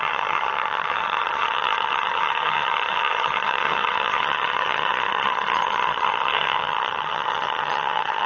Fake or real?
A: fake